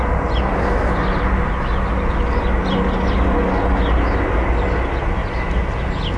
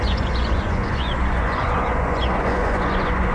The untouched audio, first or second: first